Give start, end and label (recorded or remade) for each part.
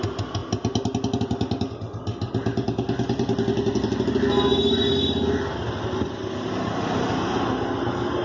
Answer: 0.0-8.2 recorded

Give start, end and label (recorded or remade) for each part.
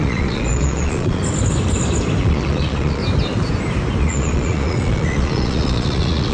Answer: 0.0-1.2 remade; 1.2-2.2 recorded; 2.2-3.0 remade; 3.0-4.0 recorded; 4.0-6.3 remade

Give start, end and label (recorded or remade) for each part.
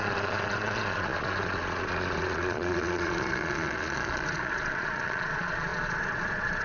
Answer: 0.0-6.6 remade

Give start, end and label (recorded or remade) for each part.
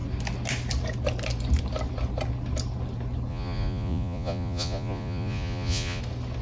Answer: 0.0-3.3 recorded; 3.3-6.0 remade; 6.0-6.4 recorded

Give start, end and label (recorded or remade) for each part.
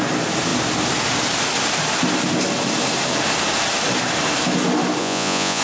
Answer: 0.0-5.0 recorded; 5.0-5.6 remade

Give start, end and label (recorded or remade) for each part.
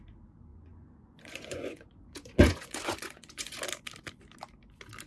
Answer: 0.0-0.5 recorded; 0.5-3.6 remade; 3.6-5.1 recorded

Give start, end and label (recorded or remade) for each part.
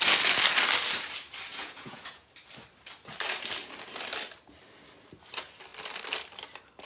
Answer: 0.0-1.5 recorded; 1.5-2.3 remade; 2.3-6.9 recorded